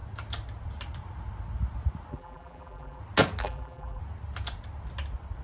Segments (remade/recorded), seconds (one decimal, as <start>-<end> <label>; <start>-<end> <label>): 0.0-2.1 recorded; 2.1-3.0 remade; 3.0-3.4 recorded; 3.4-4.0 remade; 4.0-5.4 recorded